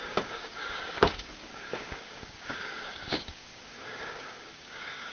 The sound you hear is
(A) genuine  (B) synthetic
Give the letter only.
B